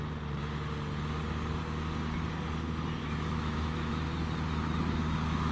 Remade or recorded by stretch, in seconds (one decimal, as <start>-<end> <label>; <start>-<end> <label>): 0.0-3.0 recorded; 3.0-3.9 remade; 3.9-5.5 recorded